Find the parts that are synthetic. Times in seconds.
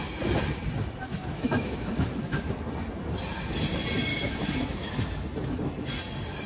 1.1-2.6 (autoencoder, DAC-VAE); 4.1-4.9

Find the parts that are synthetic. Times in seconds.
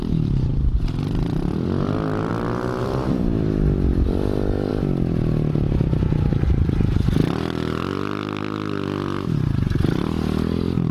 2.8-4.7 (vocoder, BigVGAN v2)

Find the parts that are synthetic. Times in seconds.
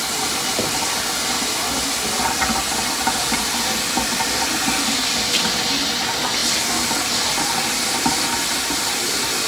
none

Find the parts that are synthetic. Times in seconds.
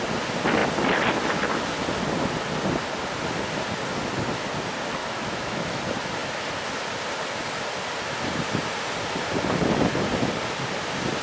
5.0-5.8 (autoencoder, DAC-VAE)